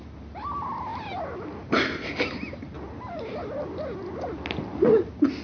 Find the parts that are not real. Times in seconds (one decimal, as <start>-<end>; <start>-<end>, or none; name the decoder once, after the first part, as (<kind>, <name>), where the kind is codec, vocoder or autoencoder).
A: none